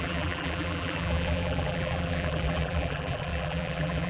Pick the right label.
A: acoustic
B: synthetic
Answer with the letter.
B